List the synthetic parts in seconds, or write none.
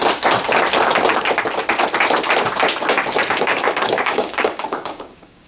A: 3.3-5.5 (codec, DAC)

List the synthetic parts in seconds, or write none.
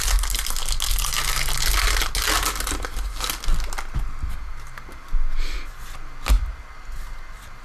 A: none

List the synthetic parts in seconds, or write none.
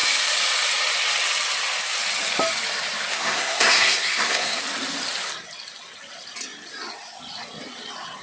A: 3.1-4.6 (codec, SNAC)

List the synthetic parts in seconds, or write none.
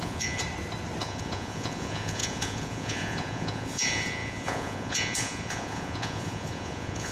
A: 0.0-0.4 (vocoder, Vocos); 1.0-7.1